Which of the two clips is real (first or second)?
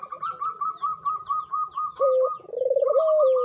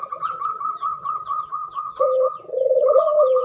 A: first